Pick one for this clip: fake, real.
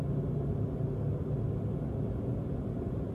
real